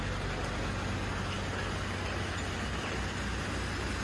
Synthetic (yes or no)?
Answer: no